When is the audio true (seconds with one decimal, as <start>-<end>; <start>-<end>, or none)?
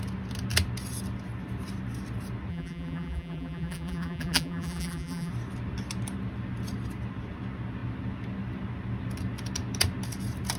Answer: 0.0-2.5; 5.3-10.6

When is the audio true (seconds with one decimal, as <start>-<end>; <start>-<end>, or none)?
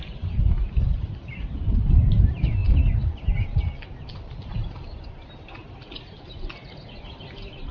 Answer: 2.6-3.9